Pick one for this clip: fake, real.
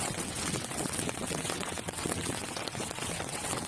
fake